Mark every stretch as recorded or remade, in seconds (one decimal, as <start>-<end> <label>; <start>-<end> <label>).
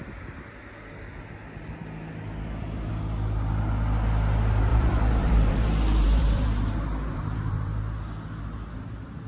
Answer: 0.0-4.7 recorded; 4.7-7.8 remade; 7.8-9.3 recorded